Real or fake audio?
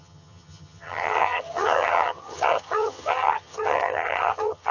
fake